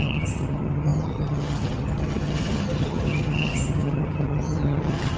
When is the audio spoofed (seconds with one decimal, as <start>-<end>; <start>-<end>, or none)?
0.0-5.2